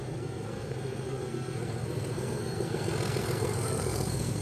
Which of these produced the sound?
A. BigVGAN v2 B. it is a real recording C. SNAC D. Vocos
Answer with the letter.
C